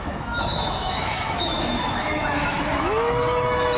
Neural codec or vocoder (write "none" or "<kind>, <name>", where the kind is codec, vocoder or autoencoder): autoencoder, DAC-VAE